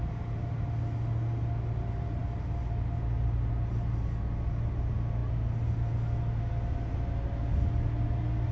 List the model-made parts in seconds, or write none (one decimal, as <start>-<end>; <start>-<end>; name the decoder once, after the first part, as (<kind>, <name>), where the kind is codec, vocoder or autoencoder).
none